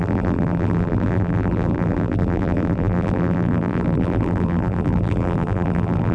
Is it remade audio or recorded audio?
remade